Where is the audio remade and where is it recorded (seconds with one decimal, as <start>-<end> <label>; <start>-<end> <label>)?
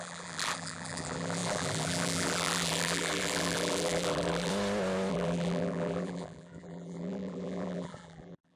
0.0-4.5 remade; 4.5-5.1 recorded; 5.1-8.6 remade